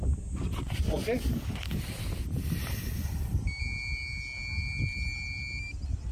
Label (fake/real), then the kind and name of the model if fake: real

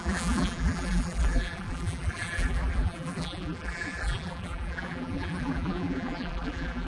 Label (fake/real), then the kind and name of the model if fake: fake, vocoder, BigVGAN v2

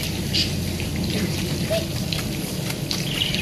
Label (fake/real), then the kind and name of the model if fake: fake, vocoder, BigVGAN v2